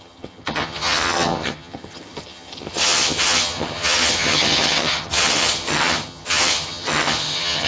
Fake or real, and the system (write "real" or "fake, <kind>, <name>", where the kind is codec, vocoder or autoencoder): fake, vocoder, HiFi-GAN